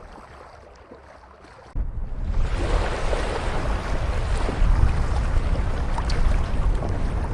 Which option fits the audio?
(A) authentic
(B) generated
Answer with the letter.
A